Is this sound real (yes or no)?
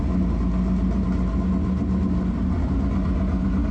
yes